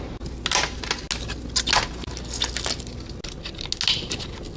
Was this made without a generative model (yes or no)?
yes